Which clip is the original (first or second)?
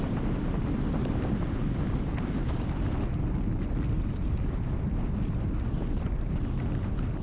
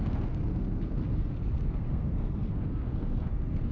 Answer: first